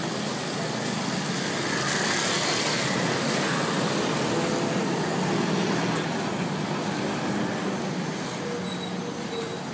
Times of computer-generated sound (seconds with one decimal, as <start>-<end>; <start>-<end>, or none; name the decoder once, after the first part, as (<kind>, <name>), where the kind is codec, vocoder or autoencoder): none